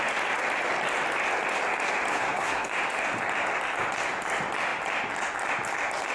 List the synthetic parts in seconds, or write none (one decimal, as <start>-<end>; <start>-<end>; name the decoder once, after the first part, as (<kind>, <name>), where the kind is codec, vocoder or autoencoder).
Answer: 2.1-2.7 (codec, SNAC)